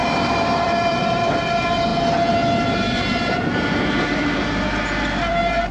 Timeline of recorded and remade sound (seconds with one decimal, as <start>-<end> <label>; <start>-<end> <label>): 0.0-1.9 remade; 1.9-2.6 recorded; 2.6-5.7 remade